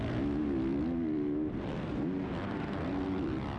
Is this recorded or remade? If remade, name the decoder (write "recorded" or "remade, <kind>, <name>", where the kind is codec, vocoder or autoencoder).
recorded